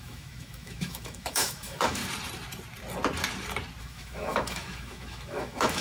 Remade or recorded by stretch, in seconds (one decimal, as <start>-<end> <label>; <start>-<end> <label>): 0.0-2.0 remade; 2.0-3.8 recorded; 3.8-5.8 remade